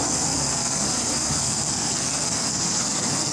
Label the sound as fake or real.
fake